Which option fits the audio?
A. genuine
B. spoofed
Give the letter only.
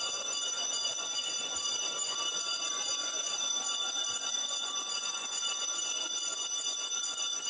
B